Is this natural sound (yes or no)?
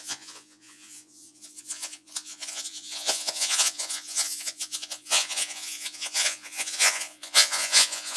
no